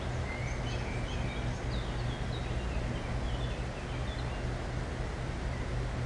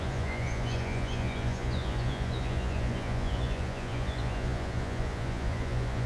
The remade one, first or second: second